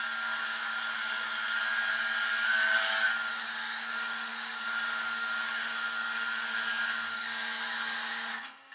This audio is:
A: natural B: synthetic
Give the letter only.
B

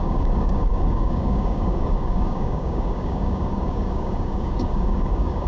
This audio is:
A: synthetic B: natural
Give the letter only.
A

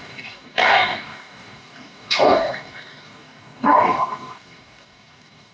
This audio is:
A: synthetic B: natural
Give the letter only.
A